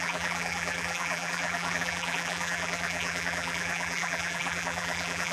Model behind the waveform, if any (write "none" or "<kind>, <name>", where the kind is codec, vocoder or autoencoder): vocoder, BigVGAN v2